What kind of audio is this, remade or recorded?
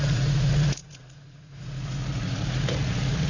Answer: remade